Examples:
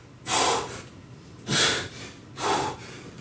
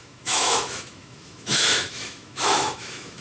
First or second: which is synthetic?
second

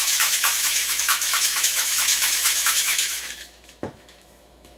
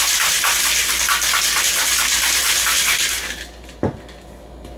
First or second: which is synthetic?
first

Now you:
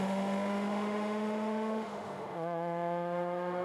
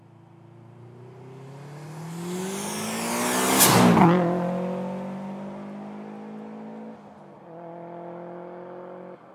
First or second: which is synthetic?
first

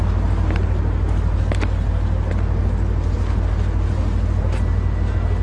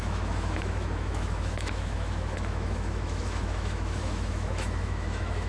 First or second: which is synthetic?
second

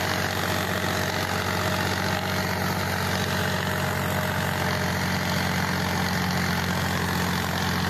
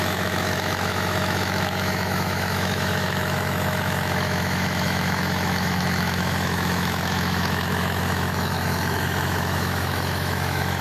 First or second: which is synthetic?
second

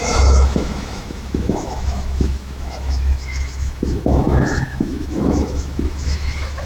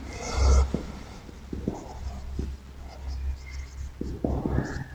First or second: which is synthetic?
first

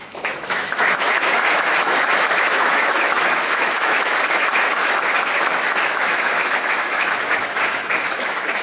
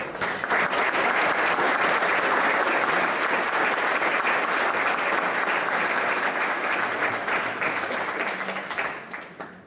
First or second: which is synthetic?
first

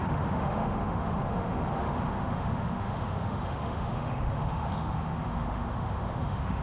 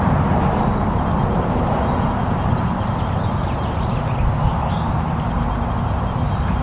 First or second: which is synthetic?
first